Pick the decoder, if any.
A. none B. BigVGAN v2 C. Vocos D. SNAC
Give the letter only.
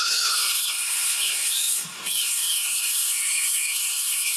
D